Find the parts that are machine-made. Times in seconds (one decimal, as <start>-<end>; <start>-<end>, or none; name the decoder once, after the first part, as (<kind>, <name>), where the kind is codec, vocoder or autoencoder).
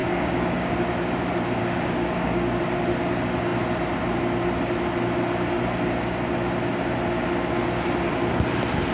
0.0-0.7 (codec, DAC); 1.6-2.6